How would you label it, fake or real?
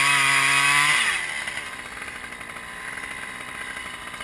real